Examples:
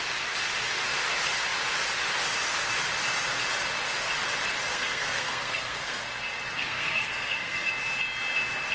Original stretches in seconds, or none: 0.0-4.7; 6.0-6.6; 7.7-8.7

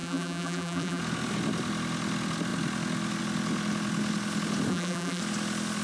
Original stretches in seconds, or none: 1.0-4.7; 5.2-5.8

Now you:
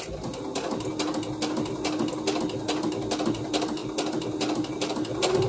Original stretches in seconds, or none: 0.0-5.5

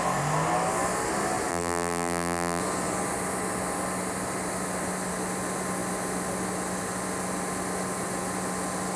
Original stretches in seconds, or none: 0.0-1.5; 2.6-9.0